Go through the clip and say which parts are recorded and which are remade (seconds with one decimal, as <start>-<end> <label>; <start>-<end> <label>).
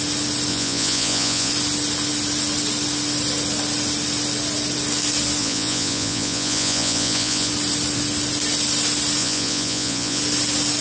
0.0-0.5 recorded; 0.5-1.5 remade; 1.5-5.4 recorded; 5.4-7.5 remade; 7.5-9.2 recorded; 9.2-10.2 remade; 10.2-10.8 recorded